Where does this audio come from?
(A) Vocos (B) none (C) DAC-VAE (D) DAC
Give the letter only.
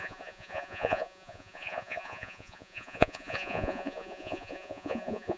A